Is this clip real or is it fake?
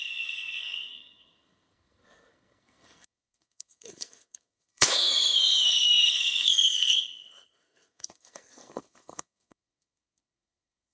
fake